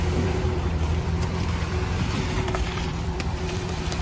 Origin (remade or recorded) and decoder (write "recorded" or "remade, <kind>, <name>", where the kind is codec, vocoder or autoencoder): remade, vocoder, BigVGAN v2